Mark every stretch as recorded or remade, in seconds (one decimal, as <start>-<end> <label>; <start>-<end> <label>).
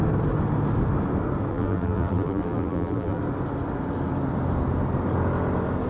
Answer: 0.0-1.5 recorded; 1.5-3.2 remade; 3.2-5.9 recorded